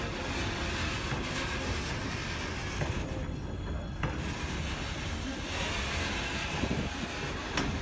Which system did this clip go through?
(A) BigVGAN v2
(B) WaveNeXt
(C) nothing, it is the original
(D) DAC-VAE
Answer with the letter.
C